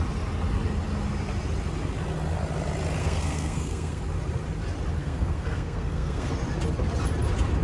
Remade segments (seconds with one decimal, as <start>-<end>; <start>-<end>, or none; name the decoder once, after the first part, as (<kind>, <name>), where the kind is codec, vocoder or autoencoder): 3.0-4.0 (codec, SNAC); 5.0-6.3